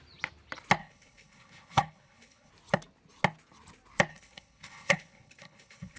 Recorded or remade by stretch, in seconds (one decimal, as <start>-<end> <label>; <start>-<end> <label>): 0.0-0.8 recorded; 0.8-2.5 remade; 2.5-4.1 recorded; 4.1-6.0 remade